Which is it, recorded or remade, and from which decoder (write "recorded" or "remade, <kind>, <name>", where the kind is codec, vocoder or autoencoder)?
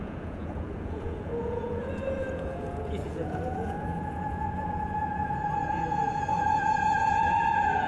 remade, vocoder, Vocos